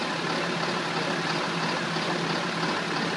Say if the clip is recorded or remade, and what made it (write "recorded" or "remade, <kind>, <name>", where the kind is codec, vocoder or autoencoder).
recorded